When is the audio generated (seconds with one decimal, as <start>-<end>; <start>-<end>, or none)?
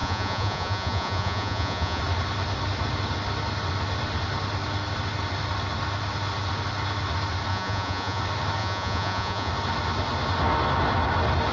0.0-2.0; 7.5-8.2; 8.6-9.5